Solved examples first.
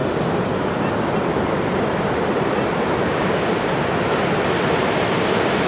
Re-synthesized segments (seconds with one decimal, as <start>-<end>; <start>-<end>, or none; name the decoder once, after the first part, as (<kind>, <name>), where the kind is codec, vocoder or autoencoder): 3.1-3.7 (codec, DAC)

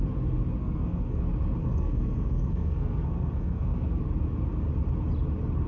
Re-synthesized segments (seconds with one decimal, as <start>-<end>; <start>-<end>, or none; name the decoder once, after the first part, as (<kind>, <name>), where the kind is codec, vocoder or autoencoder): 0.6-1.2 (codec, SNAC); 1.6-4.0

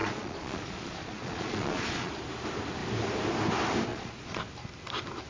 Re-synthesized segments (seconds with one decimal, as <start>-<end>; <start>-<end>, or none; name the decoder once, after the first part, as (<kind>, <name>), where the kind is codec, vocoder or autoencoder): 0.0-2.1 (vocoder, Vocos); 3.9-4.4

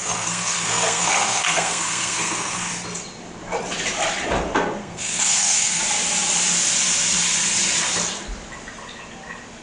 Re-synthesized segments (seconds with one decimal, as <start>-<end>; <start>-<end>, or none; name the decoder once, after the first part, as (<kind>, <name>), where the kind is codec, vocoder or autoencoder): 0.0-2.7 (codec, SNAC); 4.8-5.8

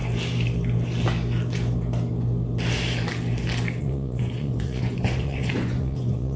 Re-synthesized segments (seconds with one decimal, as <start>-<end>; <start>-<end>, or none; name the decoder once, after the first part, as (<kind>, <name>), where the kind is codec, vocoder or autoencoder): 3.8-6.4 (vocoder, Vocos)

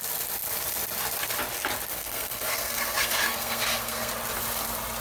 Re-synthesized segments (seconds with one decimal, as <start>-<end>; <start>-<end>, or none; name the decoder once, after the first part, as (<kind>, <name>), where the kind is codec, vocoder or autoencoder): 1.9-4.1 (codec, SNAC)

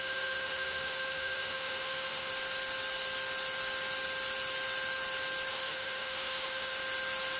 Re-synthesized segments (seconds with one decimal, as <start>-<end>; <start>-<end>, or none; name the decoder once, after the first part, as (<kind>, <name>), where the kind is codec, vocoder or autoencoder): 0.0-2.3 (autoencoder, DAC-VAE); 5.5-6.8